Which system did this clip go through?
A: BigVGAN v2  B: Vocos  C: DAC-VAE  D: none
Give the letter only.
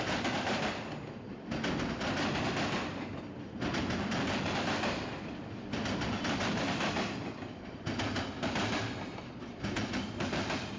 D